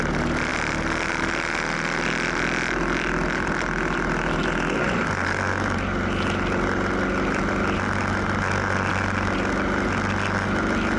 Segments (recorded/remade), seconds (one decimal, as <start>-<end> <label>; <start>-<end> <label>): 0.0-11.0 recorded

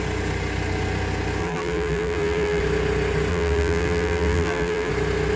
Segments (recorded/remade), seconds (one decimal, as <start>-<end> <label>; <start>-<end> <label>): 0.0-1.4 recorded; 1.4-2.6 remade; 2.6-3.3 recorded; 3.3-4.9 remade; 4.9-5.4 recorded

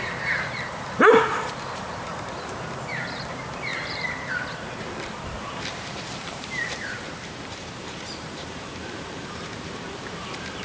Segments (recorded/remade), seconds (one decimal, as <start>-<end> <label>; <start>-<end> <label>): 0.0-10.6 remade

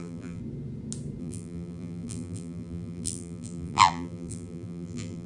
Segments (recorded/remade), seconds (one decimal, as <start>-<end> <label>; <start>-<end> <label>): 0.0-0.4 remade; 0.4-1.2 recorded; 1.2-5.3 remade